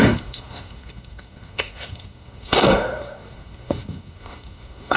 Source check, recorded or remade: remade